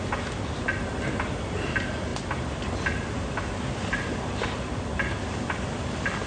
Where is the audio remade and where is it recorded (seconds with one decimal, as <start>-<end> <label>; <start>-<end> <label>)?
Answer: 0.0-6.3 recorded